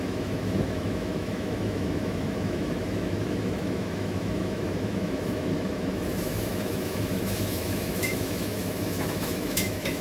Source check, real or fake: fake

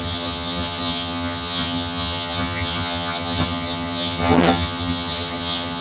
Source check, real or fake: fake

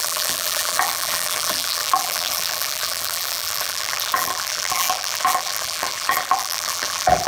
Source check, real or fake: fake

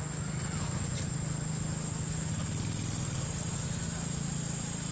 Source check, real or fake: real